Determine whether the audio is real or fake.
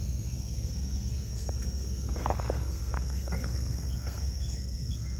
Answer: fake